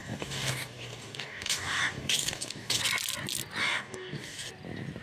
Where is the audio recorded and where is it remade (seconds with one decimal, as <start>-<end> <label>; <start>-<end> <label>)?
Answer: 0.0-2.8 remade; 2.8-3.6 recorded; 3.6-4.5 remade; 4.5-5.0 recorded